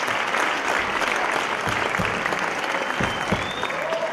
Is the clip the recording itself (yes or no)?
yes